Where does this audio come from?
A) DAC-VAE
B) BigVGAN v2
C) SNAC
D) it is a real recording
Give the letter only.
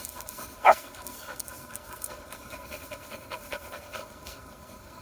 C